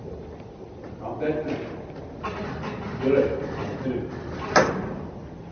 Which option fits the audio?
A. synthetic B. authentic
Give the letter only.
B